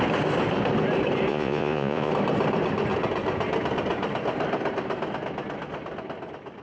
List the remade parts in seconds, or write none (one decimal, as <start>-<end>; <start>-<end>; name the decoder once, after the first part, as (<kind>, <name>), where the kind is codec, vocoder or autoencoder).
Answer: 1.3-2.1 (vocoder, Vocos)